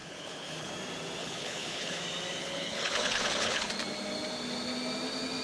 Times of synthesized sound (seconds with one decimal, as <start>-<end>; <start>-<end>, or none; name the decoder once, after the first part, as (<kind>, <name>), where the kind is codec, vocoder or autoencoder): 0.0-0.7 (codec, HILCodec); 1.2-2.0; 2.4-3.7